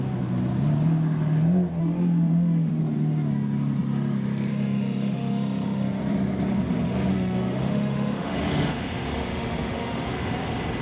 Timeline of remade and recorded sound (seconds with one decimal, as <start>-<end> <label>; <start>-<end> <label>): 0.0-1.8 recorded; 1.8-2.8 remade; 2.8-4.5 recorded; 4.5-6.0 remade; 6.0-7.1 recorded; 7.1-10.3 remade; 10.3-10.8 recorded